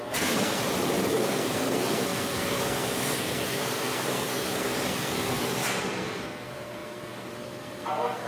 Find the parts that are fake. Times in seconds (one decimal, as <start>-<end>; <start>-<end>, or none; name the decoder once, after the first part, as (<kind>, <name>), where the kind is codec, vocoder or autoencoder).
0.0-0.6 (codec, SNAC); 1.1-8.3